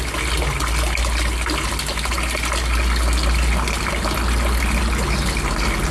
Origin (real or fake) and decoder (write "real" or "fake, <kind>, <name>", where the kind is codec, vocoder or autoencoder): real